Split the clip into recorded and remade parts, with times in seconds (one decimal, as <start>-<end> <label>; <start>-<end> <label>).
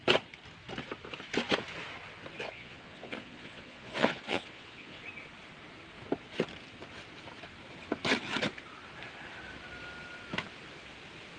0.0-2.4 recorded; 2.4-5.0 remade; 5.0-11.4 recorded